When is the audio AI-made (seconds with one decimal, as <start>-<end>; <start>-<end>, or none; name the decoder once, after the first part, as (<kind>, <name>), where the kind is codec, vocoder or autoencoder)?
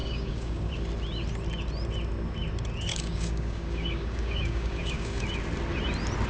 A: 0.0-0.7 (codec, DAC); 2.9-5.2